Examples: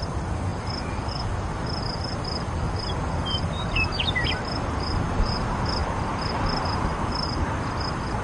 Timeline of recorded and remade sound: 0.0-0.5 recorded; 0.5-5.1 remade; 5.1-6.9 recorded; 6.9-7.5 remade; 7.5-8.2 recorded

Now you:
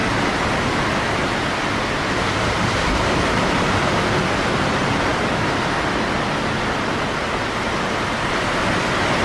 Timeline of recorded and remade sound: 0.0-2.7 recorded; 2.7-5.1 remade; 5.1-8.7 recorded; 8.7-9.2 remade

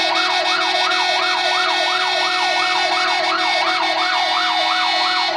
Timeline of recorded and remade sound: 0.0-1.4 recorded; 1.4-4.6 remade; 4.6-5.4 recorded

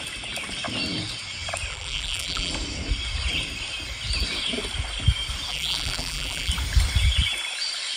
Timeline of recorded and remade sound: 0.0-1.7 recorded; 1.7-2.5 remade; 2.5-5.5 recorded; 5.5-6.5 remade; 6.5-8.0 recorded

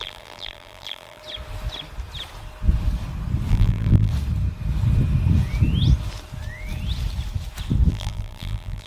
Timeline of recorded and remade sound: 0.0-1.2 remade; 1.2-3.5 recorded; 3.5-4.1 remade; 4.1-7.9 recorded; 7.9-8.9 remade

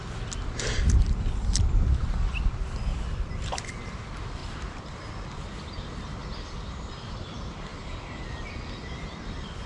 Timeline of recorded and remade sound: 0.0-4.4 recorded; 4.4-5.0 remade; 5.0-9.7 recorded

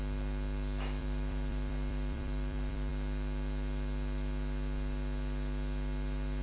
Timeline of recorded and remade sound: 0.0-1.0 recorded; 1.0-2.9 remade; 2.9-6.4 recorded